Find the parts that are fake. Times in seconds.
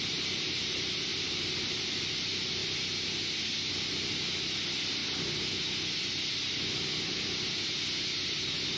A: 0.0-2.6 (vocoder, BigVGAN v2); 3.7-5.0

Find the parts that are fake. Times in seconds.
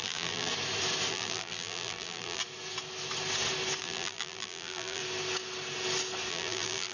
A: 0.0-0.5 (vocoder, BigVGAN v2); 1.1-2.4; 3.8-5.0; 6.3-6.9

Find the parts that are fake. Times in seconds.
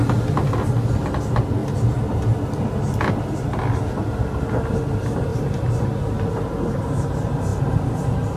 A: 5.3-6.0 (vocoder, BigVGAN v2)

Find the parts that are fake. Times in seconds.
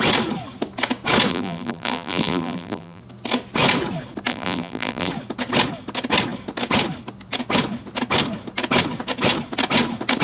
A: 1.3-3.0 (vocoder, BigVGAN v2); 4.3-5.1